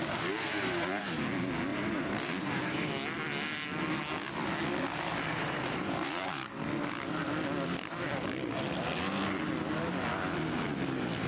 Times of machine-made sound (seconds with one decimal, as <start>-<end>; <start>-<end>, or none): 1.7-2.9; 5.3-6.5